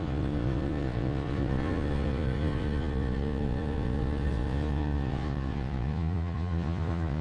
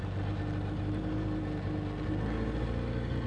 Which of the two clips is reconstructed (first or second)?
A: first